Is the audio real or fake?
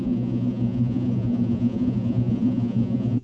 fake